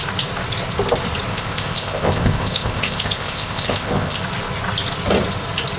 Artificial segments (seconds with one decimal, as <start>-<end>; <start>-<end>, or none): 1.3-4.2